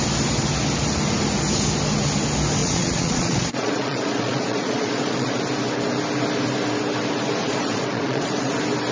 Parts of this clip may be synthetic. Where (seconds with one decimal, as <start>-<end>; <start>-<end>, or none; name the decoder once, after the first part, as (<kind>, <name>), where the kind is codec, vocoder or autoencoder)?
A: 2.6-5.4 (vocoder, Vocos); 7.4-8.5